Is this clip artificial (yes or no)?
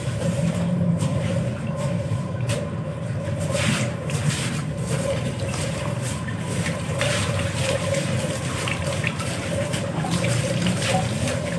yes